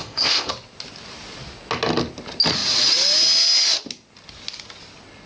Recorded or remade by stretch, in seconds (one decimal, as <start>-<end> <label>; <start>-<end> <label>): 0.0-0.5 remade; 0.5-5.3 recorded